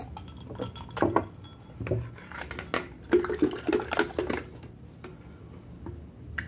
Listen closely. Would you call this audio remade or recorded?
recorded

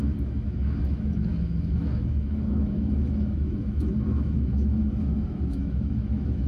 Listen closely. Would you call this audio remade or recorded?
remade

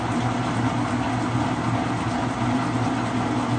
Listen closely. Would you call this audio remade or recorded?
recorded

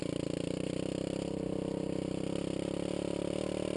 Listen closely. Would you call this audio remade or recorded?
recorded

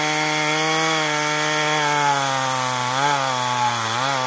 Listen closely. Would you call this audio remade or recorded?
recorded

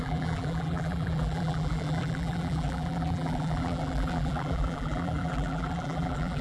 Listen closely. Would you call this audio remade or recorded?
remade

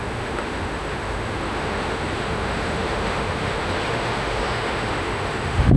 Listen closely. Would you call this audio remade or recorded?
remade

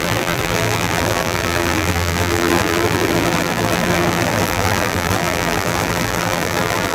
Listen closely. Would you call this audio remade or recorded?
remade